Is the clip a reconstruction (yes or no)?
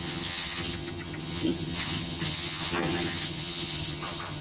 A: yes